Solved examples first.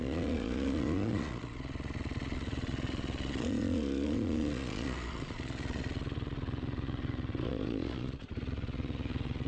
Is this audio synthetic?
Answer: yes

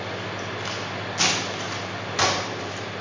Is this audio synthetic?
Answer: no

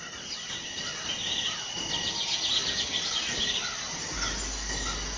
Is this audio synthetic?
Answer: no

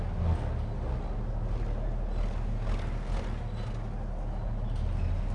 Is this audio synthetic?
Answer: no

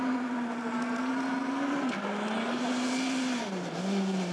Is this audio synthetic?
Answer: no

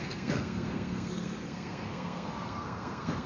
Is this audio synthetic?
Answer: yes